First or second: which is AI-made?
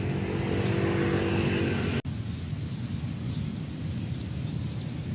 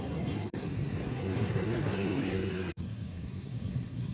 second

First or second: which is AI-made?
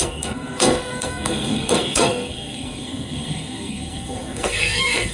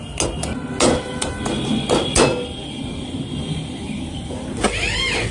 first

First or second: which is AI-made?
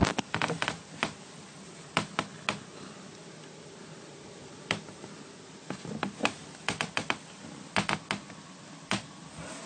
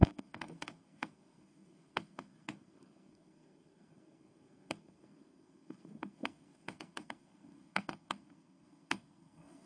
second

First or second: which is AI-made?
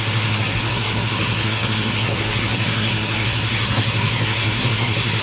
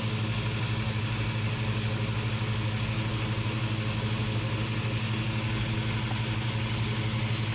first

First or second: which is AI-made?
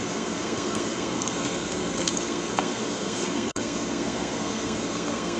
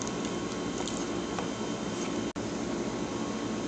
first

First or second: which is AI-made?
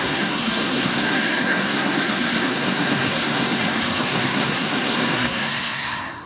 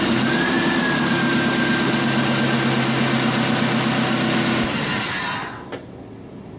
first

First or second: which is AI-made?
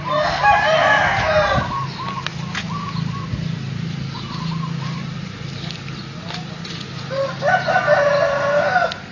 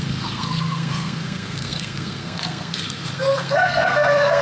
second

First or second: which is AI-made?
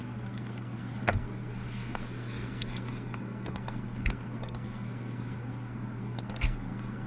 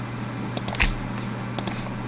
first